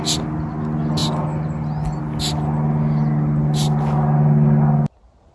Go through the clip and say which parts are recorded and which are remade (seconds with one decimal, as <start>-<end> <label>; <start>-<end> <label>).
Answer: 0.0-5.3 recorded